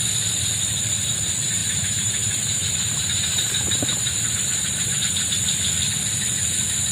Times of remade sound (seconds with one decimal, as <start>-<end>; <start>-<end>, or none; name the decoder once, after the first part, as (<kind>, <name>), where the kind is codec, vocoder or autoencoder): 1.6-5.0 (vocoder, BigVGAN v2)